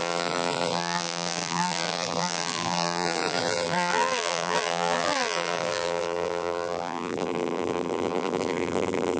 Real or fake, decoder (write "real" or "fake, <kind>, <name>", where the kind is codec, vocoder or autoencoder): fake, vocoder, BigVGAN v2